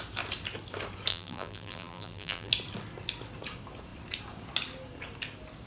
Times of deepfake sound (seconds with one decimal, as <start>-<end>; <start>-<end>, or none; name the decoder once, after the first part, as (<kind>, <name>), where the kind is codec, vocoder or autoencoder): 1.1-2.5 (vocoder, BigVGAN v2)